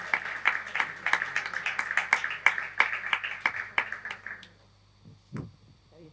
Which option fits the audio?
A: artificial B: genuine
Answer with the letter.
B